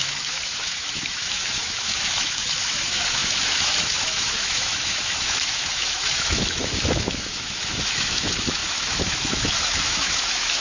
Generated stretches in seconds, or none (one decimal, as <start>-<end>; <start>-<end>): 0.0-10.6